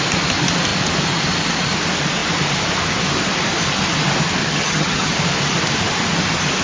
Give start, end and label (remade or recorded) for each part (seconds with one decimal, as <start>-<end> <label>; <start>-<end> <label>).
0.0-4.4 recorded; 4.4-5.1 remade; 5.1-6.6 recorded

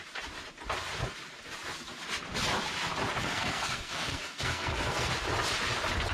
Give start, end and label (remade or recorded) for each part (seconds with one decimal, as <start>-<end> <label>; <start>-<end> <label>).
0.0-3.2 recorded; 3.2-5.1 remade; 5.1-6.1 recorded